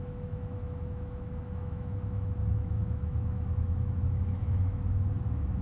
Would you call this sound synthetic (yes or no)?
yes